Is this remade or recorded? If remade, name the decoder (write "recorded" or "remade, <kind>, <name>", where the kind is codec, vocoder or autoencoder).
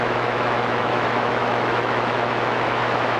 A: remade, autoencoder, DAC-VAE